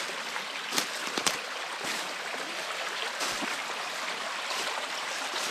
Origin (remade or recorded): recorded